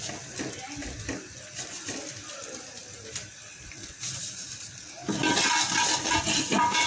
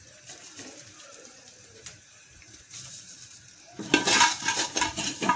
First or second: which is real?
first